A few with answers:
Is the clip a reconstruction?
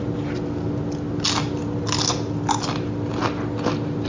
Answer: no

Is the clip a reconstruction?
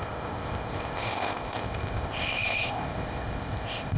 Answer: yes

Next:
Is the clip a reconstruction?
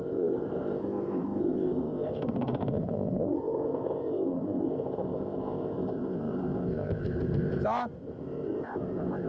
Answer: yes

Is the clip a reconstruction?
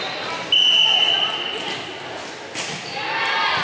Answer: no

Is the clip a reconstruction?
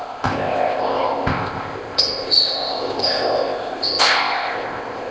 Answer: yes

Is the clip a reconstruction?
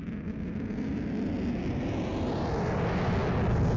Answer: no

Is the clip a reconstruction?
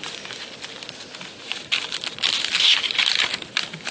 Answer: no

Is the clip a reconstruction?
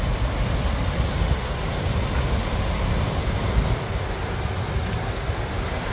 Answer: no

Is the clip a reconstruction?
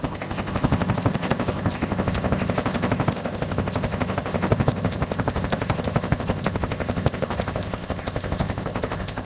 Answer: yes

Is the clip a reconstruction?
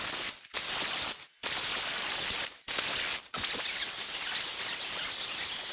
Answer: no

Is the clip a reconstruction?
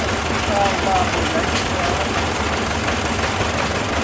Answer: no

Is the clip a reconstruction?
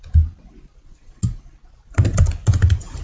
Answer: no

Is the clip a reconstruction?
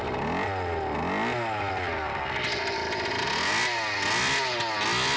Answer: no